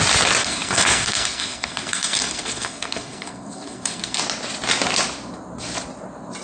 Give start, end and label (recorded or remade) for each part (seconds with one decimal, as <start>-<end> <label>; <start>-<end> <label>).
0.0-0.4 recorded; 0.4-4.2 remade; 4.2-6.4 recorded